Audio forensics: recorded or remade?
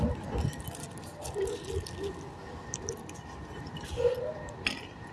recorded